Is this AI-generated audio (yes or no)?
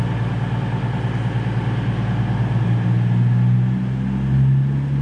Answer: no